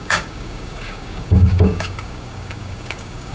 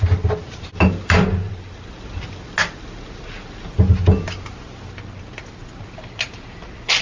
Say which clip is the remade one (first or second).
first